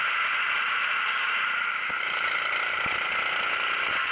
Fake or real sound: real